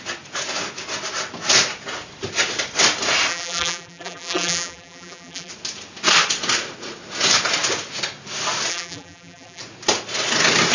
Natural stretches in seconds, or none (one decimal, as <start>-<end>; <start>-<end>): 0.0-3.3; 5.5-8.7; 9.6-10.7